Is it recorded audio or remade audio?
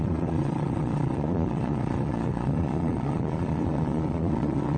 remade